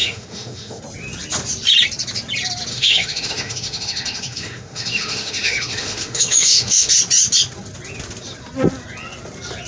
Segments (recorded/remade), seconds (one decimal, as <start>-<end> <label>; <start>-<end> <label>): 0.0-0.8 remade; 0.8-2.7 recorded; 2.7-6.9 remade; 6.9-9.7 recorded